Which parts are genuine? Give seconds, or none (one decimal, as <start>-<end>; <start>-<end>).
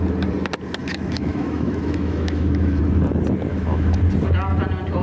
0.0-0.8; 2.8-3.5; 4.0-5.0